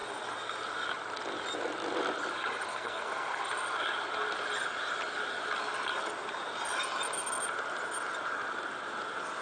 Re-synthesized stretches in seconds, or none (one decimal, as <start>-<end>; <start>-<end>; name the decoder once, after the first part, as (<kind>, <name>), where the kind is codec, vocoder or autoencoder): 2.7-3.4 (codec, SNAC)